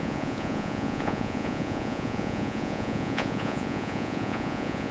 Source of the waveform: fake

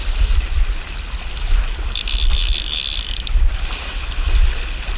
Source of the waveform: real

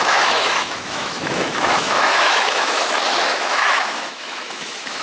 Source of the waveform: fake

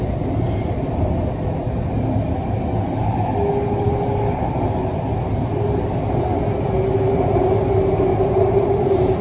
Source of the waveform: real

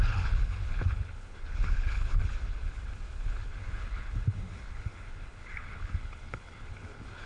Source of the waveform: fake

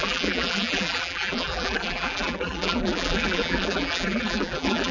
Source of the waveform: fake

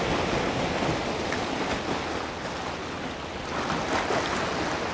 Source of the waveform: real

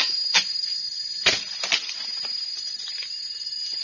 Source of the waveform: real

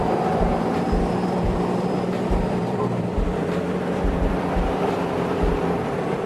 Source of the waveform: fake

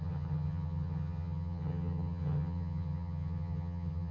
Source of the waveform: fake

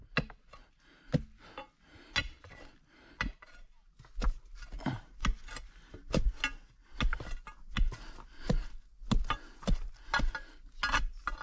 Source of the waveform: real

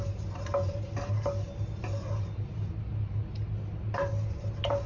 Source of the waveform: real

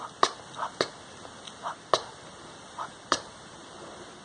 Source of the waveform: real